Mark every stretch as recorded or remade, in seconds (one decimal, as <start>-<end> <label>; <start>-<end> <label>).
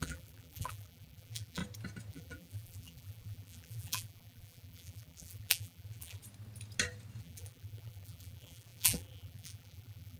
0.0-1.6 remade; 1.6-2.1 recorded; 2.1-6.2 remade; 6.2-7.2 recorded; 7.2-10.2 remade